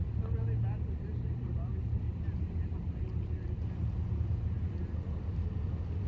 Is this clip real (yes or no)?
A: yes